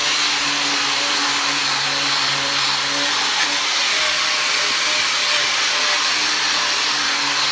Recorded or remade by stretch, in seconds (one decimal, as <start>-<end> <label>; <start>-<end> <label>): 0.0-7.5 recorded